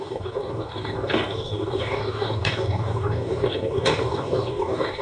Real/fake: fake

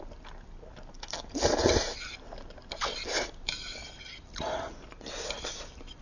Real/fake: real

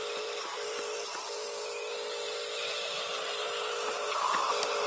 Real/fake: real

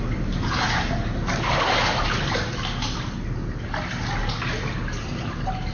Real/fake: real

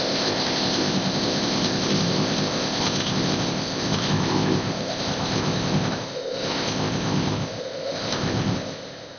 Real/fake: fake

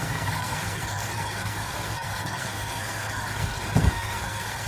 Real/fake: fake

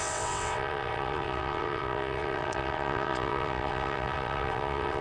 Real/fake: fake